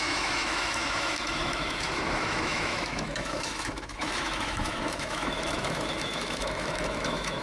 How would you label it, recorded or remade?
remade